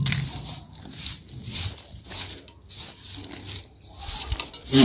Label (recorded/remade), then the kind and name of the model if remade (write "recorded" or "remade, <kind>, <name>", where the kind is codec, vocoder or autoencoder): recorded